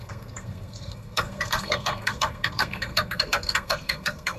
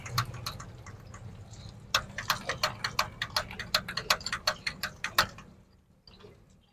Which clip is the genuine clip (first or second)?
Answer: second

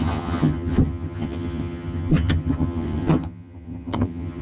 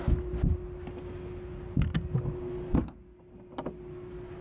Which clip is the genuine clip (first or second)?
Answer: second